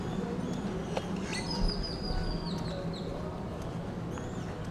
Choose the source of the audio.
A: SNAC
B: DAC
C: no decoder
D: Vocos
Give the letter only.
C